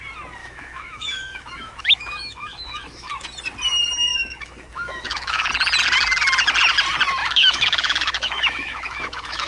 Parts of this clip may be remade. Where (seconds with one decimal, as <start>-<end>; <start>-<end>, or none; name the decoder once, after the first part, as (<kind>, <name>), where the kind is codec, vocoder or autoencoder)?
0.4-3.1 (autoencoder, DAC-VAE); 4.1-5.5; 7.2-9.5